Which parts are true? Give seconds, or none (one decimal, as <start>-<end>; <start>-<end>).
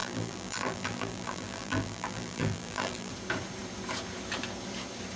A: 3.1-5.2